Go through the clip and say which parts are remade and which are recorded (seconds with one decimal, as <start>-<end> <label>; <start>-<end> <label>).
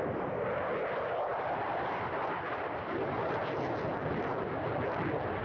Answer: 0.0-5.4 recorded